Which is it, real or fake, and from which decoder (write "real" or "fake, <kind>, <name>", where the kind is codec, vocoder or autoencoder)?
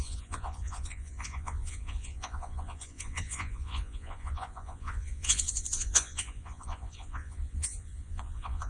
fake, vocoder, Vocos